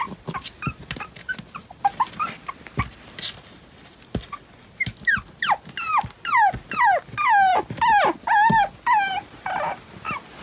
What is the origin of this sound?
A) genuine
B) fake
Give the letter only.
A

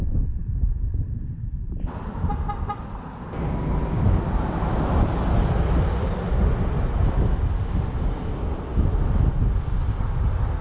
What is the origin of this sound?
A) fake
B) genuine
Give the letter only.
B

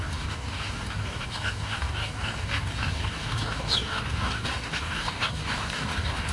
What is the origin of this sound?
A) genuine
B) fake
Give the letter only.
B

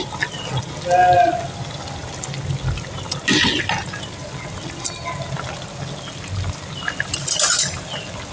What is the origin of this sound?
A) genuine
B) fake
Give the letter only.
A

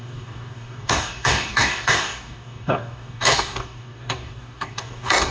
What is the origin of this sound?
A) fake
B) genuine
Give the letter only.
A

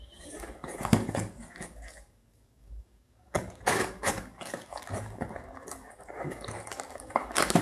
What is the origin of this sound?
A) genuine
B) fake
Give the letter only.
B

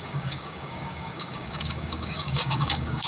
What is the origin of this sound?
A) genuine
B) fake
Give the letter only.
B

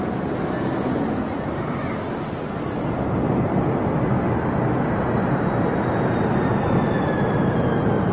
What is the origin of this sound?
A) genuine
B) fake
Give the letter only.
A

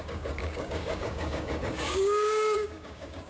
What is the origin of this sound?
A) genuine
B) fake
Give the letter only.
B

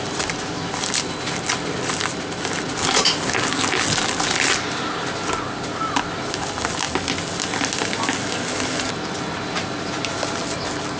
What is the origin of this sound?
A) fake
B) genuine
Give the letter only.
B